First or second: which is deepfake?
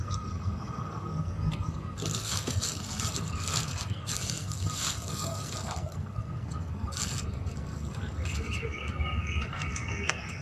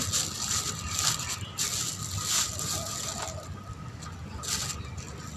first